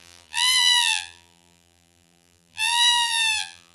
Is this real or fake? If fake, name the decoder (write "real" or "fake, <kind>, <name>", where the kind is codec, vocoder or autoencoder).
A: fake, vocoder, BigVGAN v2